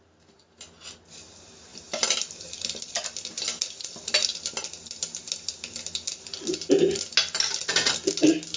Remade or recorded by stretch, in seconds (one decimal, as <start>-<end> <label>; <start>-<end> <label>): 0.0-1.7 recorded; 1.7-2.9 remade; 2.9-8.6 recorded